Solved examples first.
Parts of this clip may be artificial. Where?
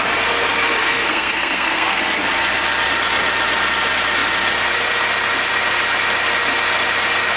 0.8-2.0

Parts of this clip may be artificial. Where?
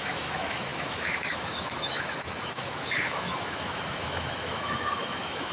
0.0-5.5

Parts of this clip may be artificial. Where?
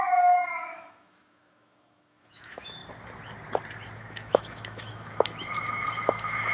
0.0-2.8; 4.0-6.5